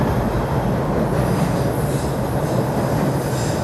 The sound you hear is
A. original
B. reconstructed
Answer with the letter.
A